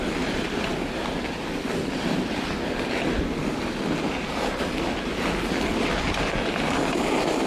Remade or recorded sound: recorded